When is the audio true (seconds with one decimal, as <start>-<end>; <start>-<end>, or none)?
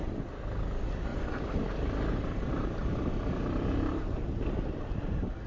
0.0-1.1; 4.4-5.5